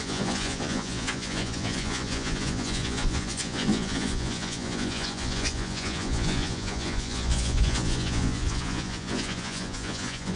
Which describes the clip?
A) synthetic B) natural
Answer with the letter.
A